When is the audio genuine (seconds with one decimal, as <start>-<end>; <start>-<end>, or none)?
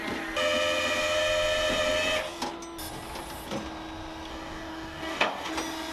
0.0-4.3; 5.5-5.9